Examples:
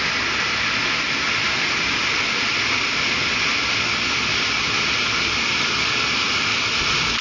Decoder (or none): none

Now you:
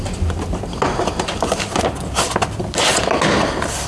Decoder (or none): none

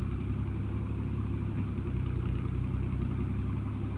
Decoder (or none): none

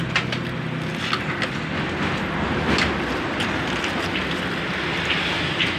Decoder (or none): none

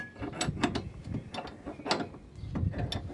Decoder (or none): none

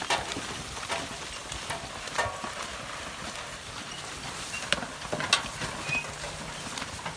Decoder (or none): none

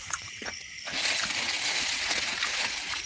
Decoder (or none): vocoder, Vocos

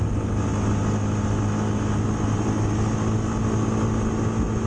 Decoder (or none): none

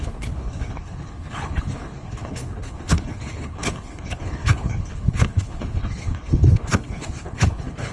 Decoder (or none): codec, HILCodec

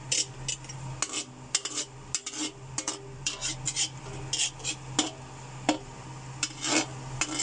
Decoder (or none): none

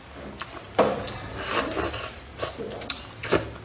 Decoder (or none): none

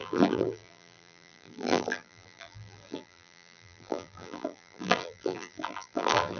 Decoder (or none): vocoder, BigVGAN v2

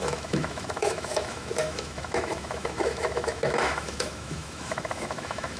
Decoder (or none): autoencoder, DAC-VAE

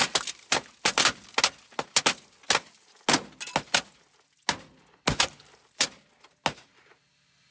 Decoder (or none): none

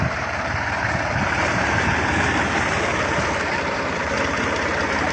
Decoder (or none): vocoder, BigVGAN v2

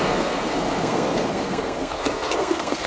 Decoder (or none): codec, SNAC